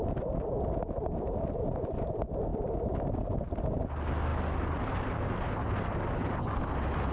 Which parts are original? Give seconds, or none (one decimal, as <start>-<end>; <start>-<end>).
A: 0.0-7.1